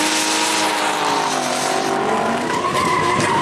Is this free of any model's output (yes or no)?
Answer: yes